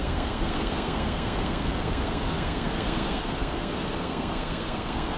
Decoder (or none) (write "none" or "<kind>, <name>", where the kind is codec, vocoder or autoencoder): codec, SNAC